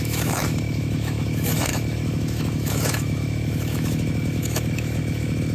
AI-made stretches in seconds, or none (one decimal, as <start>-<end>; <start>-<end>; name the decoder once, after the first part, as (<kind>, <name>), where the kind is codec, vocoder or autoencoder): 0.0-5.5 (autoencoder, DAC-VAE)